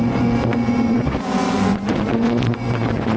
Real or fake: fake